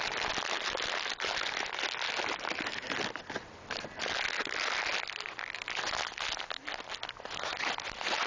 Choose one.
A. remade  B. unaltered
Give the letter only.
B